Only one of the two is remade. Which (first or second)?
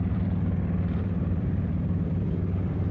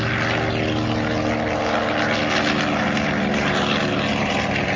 first